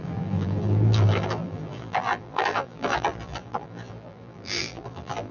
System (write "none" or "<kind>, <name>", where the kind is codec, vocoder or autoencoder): vocoder, BigVGAN v2